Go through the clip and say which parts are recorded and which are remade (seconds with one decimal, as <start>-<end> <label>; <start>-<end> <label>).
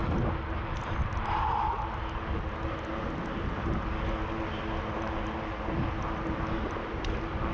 0.0-7.5 recorded